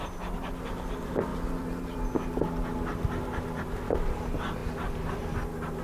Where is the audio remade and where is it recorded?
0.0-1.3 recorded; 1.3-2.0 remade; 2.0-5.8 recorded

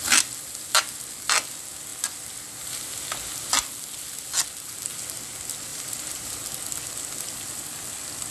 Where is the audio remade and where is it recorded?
0.0-5.7 recorded; 5.7-6.3 remade; 6.3-8.3 recorded